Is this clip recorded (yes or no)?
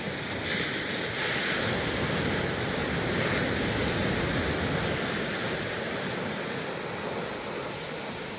yes